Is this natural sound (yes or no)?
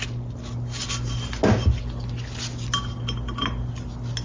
yes